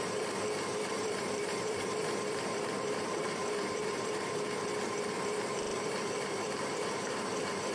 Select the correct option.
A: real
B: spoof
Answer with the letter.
B